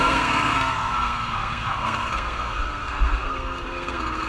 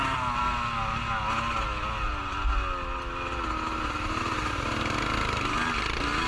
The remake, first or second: first